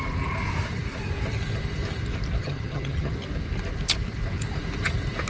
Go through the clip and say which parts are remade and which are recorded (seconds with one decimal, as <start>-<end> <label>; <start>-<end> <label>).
0.0-2.4 recorded; 2.4-3.1 remade; 3.1-5.3 recorded